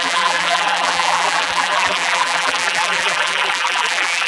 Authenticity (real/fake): fake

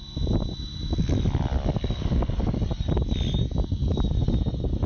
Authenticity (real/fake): real